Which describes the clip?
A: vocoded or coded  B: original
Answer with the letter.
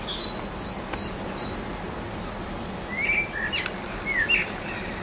B